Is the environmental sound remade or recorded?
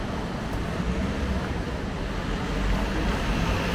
recorded